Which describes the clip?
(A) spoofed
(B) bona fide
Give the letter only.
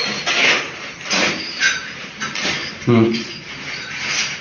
A